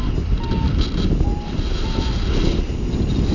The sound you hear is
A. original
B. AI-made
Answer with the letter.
A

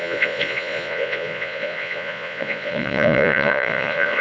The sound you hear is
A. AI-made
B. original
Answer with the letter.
A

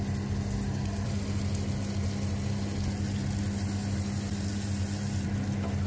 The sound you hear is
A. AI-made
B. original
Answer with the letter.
B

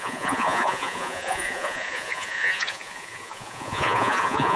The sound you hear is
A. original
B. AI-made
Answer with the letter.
B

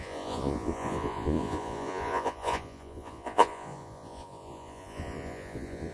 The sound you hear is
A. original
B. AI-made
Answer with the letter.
B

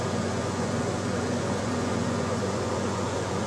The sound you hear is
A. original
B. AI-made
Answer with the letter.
B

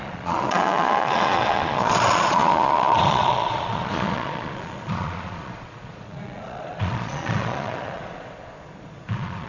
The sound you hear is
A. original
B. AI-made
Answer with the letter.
B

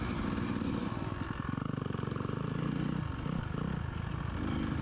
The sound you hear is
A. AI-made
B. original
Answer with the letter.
B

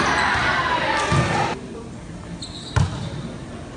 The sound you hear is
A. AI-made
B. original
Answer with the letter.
B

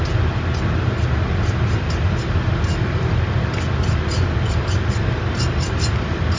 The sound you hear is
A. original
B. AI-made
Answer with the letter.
A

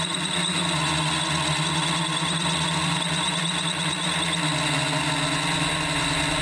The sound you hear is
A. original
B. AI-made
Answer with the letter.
A